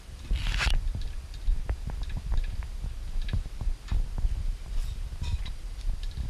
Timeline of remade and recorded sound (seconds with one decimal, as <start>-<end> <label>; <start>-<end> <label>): 0.0-0.4 remade; 0.4-4.2 recorded; 4.2-6.3 remade